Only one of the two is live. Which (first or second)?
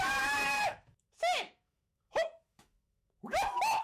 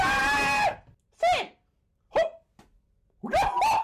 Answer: second